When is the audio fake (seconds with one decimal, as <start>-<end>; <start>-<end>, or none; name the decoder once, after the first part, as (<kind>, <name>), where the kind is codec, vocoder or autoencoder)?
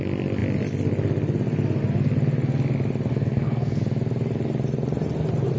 3.1-3.8 (codec, SNAC)